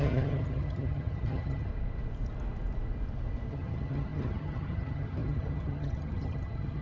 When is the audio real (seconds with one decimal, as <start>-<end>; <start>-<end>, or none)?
1.7-3.5